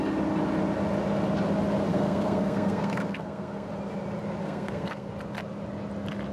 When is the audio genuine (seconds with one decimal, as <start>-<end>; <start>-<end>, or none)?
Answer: 0.0-1.9; 3.7-4.4; 5.1-6.3